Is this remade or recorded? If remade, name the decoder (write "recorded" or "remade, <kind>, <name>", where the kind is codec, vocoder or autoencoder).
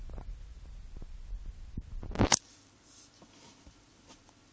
recorded